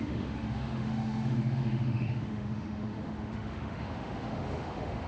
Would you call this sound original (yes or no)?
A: no